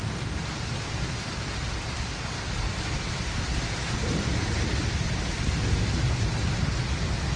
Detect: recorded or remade recorded